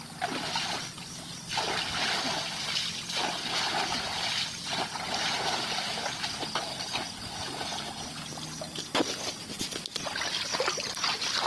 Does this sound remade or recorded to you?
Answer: recorded